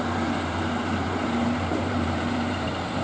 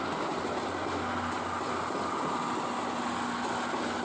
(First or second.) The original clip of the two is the second